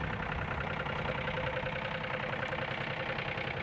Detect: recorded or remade recorded